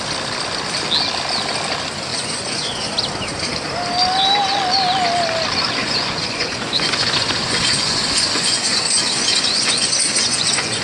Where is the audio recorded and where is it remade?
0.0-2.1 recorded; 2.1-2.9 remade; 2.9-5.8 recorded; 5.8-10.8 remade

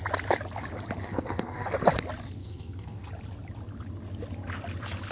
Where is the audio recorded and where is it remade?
0.0-1.0 recorded; 1.0-1.7 remade; 1.7-2.4 recorded; 2.4-3.1 remade; 3.1-5.1 recorded

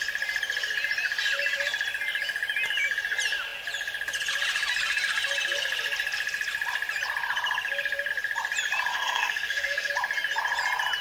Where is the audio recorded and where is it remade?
0.0-8.9 recorded; 8.9-9.9 remade; 9.9-11.0 recorded

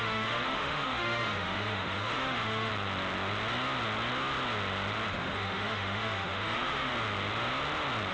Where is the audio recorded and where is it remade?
0.0-2.7 remade; 2.7-5.1 recorded; 5.1-6.9 remade; 6.9-8.1 recorded

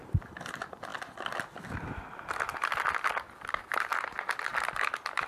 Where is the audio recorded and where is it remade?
0.0-5.3 recorded

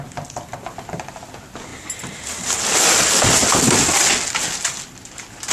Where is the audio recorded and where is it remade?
0.0-5.5 recorded

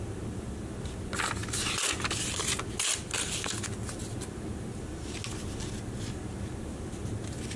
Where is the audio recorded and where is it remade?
0.0-7.6 recorded